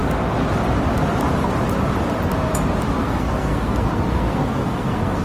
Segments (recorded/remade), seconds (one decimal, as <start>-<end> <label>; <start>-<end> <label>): 0.0-3.0 recorded; 3.0-5.2 remade

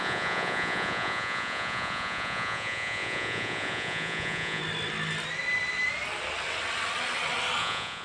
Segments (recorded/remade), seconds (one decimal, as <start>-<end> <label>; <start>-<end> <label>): 0.0-4.6 remade; 4.6-7.6 recorded; 7.6-8.0 remade

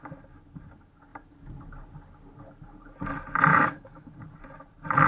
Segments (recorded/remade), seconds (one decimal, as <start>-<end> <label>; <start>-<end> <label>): 0.0-3.5 recorded; 3.5-4.1 remade; 4.1-5.1 recorded